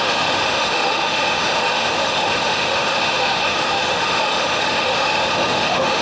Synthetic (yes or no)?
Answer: yes